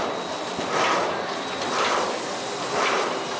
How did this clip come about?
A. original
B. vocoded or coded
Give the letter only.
A